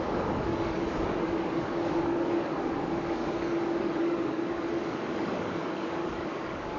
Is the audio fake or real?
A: fake